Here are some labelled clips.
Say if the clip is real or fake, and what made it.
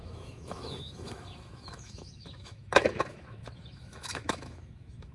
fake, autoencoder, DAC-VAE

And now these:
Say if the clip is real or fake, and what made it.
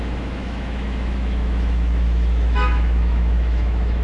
fake, autoencoder, DAC-VAE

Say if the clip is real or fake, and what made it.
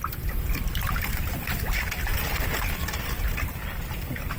real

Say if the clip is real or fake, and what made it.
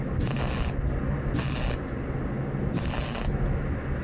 real